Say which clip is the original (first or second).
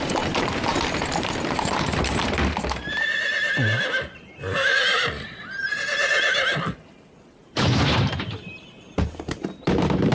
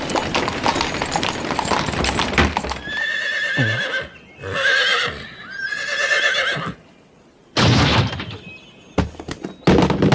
second